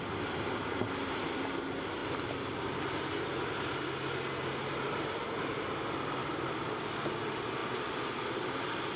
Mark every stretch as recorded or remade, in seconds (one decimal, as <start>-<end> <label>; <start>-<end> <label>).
0.0-6.2 recorded; 6.2-6.8 remade; 6.8-9.0 recorded